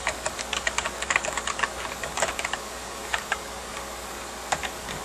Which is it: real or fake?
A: fake